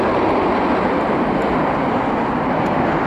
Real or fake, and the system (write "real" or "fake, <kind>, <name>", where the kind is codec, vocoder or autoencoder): real